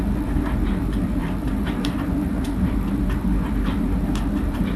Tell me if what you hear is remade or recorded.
remade